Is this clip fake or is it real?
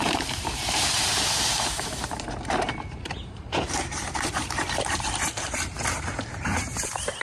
fake